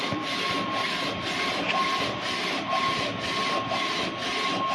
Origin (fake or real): real